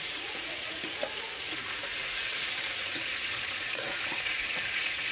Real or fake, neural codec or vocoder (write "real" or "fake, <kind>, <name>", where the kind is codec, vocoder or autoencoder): fake, vocoder, Vocos